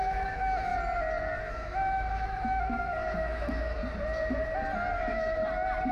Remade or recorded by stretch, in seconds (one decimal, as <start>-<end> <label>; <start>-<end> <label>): 0.0-0.7 remade; 0.7-1.4 recorded; 1.4-3.8 remade; 3.8-5.0 recorded; 5.0-5.4 remade; 5.4-5.9 recorded